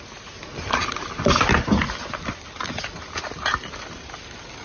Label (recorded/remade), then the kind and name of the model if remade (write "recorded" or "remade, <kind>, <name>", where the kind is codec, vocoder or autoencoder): recorded